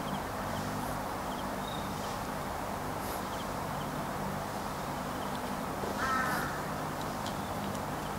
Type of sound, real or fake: fake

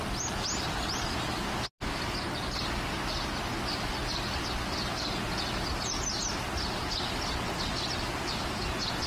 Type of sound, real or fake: real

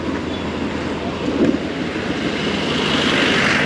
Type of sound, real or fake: real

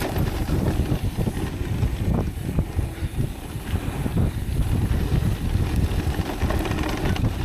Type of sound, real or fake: real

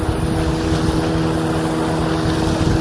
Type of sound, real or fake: real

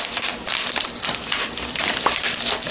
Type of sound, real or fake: fake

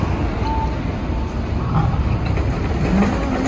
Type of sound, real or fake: real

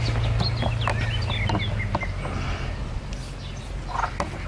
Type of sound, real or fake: real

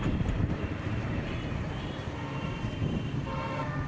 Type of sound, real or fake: fake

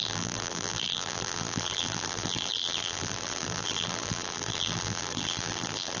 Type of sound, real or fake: fake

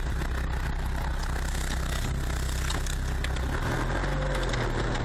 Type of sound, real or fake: real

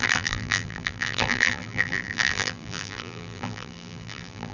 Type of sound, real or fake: fake